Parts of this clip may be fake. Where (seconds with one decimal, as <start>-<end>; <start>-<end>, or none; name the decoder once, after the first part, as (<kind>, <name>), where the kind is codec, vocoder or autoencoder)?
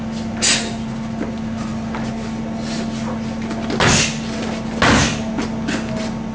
none